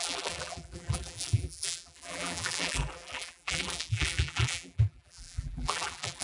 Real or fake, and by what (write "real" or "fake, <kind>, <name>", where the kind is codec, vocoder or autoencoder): fake, vocoder, BigVGAN v2